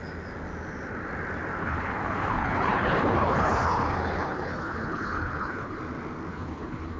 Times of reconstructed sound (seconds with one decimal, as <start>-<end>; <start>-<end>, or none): 1.6-5.8; 6.3-7.0